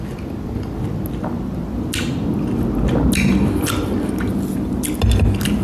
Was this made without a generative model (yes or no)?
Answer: yes